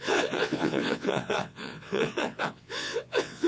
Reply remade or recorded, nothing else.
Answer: remade